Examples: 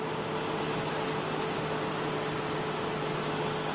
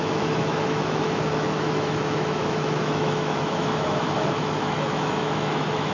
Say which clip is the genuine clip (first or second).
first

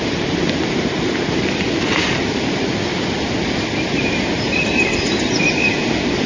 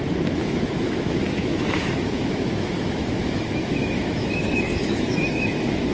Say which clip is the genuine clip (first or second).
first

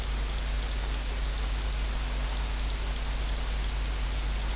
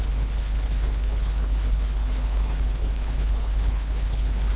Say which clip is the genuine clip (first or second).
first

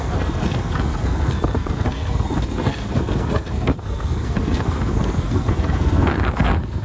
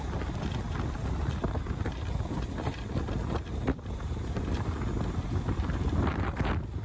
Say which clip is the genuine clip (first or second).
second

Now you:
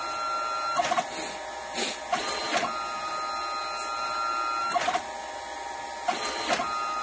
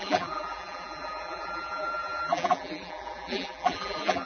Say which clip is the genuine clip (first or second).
first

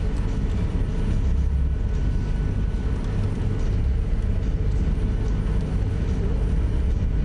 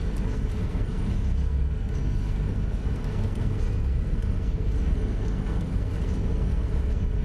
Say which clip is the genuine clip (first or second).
first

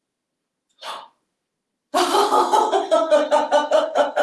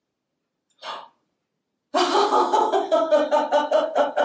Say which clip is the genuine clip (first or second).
second